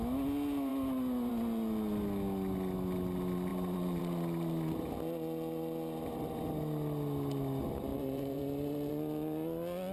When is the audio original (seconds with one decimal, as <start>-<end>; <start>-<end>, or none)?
0.0-3.5; 4.0-7.9; 8.9-9.9